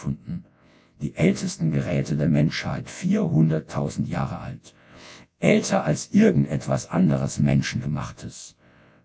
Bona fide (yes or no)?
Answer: no